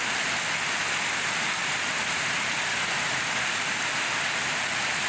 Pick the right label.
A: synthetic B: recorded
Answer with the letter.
B